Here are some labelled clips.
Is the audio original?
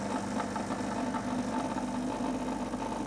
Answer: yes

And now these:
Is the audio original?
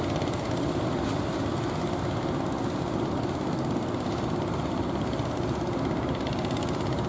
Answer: yes